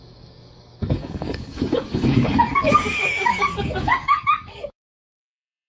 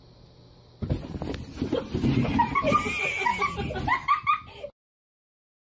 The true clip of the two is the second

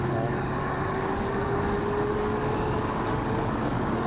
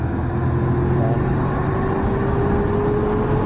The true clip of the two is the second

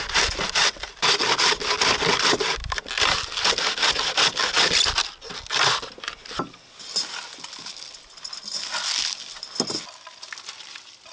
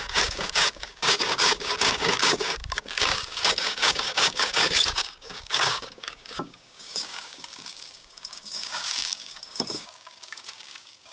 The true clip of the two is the first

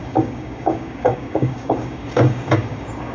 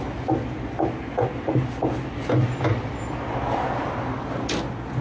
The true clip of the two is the second